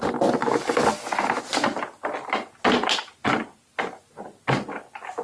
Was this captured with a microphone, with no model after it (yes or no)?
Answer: yes